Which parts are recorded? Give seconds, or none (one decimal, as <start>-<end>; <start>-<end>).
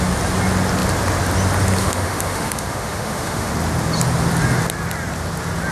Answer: 0.0-1.8; 3.5-5.7